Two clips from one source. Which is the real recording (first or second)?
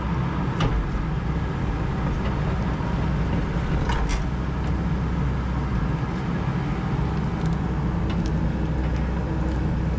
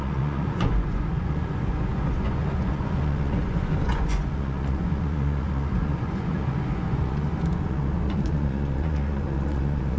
first